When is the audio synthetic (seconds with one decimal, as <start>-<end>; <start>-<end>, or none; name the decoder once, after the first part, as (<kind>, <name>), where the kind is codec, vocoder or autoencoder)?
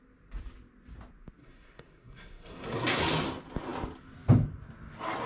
1.4-3.0 (codec, SNAC)